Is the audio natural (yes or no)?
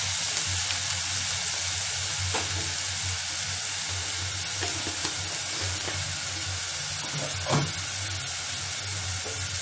yes